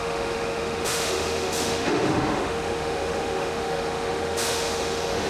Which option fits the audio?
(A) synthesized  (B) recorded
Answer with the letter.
A